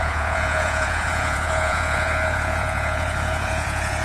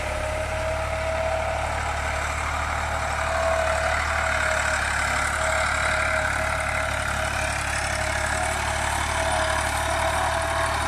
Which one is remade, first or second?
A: first